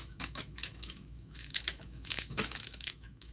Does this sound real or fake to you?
fake